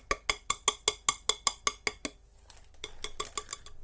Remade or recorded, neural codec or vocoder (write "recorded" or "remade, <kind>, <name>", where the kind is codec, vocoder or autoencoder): recorded